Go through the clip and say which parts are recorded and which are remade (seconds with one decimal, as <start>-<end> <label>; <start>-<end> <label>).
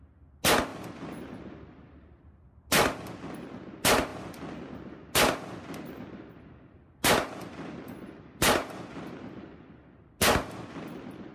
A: 0.0-11.3 recorded